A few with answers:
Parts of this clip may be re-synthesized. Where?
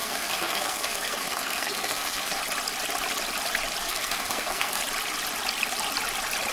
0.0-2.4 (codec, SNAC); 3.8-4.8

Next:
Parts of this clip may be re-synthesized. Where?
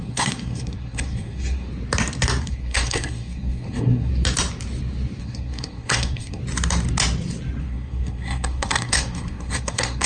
0.0-1.7 (codec, SNAC); 2.4-4.1; 5.2-6.4; 7.6-10.1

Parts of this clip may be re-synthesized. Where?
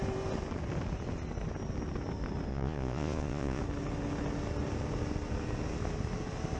2.5-3.6 (vocoder, Vocos)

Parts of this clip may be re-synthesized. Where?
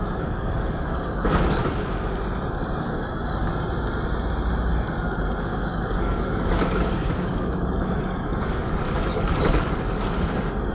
0.0-1.6 (codec, DAC); 2.8-3.5; 5.4-10.7